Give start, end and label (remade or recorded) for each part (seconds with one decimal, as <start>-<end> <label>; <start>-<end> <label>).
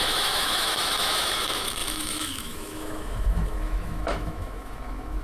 0.0-5.2 remade